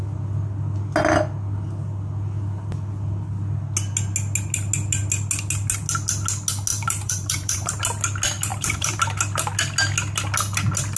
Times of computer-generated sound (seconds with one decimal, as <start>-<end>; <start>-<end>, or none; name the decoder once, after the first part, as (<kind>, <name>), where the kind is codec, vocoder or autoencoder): 6.7-7.7 (vocoder, BigVGAN v2); 8.5-9.0